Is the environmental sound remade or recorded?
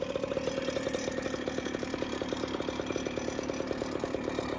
remade